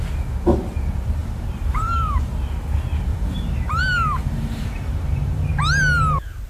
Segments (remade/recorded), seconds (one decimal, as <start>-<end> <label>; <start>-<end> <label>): 0.0-1.2 recorded; 1.2-2.3 remade; 2.3-3.1 recorded; 3.1-3.8 remade; 3.8-4.2 recorded; 4.2-5.6 remade; 5.6-6.5 recorded